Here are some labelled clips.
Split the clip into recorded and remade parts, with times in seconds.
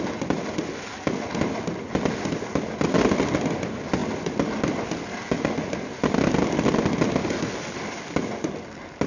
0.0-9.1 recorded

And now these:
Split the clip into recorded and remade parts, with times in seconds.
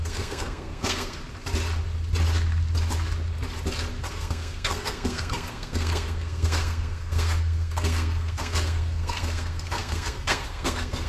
0.0-1.2 remade; 1.2-4.1 recorded; 4.1-11.1 remade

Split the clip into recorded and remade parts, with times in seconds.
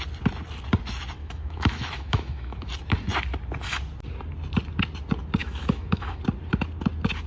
0.0-1.2 recorded; 1.2-2.7 remade; 2.7-5.4 recorded; 5.4-6.2 remade; 6.2-7.3 recorded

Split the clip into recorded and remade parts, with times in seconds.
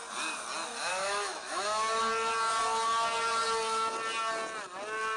0.0-0.9 recorded; 0.9-2.0 remade; 2.0-5.2 recorded